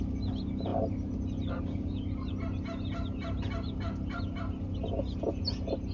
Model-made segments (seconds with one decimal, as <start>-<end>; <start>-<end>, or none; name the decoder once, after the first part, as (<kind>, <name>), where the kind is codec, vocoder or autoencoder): none

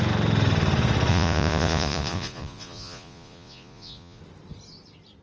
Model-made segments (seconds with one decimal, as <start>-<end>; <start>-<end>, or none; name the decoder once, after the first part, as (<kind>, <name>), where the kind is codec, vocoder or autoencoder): 1.1-4.2 (vocoder, Vocos)

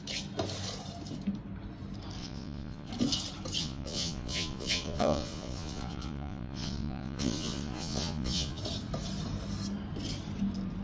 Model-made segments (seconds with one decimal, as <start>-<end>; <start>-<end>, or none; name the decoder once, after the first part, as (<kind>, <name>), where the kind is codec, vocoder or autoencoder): 2.2-2.9 (vocoder, Vocos); 3.6-8.6